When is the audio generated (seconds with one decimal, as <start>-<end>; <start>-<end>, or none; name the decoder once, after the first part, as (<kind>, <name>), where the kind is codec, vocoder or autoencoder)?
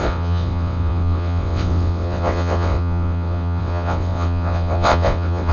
0.0-5.5 (vocoder, WaveNeXt)